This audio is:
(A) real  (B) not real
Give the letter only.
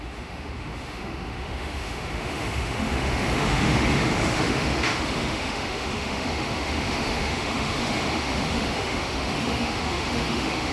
B